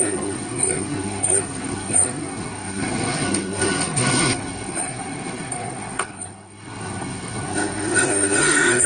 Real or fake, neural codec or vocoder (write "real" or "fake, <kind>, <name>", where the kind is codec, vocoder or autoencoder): fake, codec, SNAC